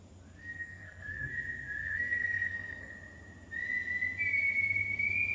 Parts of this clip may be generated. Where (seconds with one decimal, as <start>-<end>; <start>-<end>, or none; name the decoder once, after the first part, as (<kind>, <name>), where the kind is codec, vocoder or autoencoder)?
0.4-1.3 (codec, SNAC); 1.8-2.9